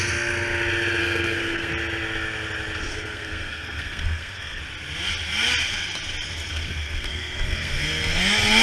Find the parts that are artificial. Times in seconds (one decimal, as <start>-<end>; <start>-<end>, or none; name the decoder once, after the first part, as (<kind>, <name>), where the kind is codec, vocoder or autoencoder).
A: 1.0-1.7 (codec, SNAC); 2.9-4.6; 6.5-8.2